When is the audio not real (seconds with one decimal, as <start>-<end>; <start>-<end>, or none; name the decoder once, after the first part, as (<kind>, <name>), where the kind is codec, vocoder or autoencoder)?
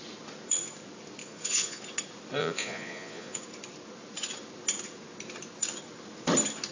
1.2-1.8 (vocoder, Vocos); 2.4-3.4